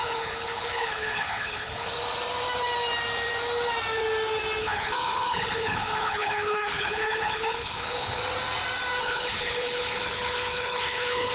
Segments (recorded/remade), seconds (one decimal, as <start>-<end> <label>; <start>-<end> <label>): 0.0-1.9 remade; 1.9-4.6 recorded; 4.6-8.2 remade; 8.2-9.0 recorded; 9.0-11.3 remade